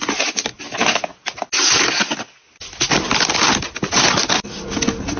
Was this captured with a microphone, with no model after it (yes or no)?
yes